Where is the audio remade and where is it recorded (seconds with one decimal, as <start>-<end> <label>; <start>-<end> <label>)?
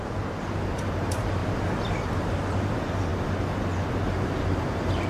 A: 0.0-1.4 remade; 1.4-2.2 recorded; 2.2-3.1 remade; 3.1-3.9 recorded; 3.9-5.1 remade